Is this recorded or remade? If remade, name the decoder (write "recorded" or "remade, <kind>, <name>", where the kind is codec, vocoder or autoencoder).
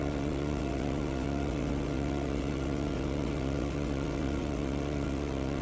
remade, vocoder, WaveNeXt